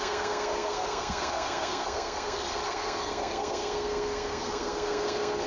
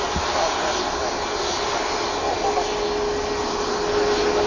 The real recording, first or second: second